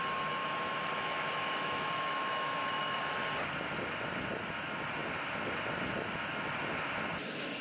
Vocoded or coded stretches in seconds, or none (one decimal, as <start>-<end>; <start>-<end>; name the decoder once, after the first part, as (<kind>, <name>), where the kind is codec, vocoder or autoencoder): 0.4-3.0 (autoencoder, DAC-VAE)